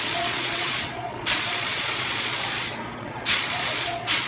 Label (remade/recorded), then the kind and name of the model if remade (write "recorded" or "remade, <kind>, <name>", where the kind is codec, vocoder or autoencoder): remade, vocoder, Vocos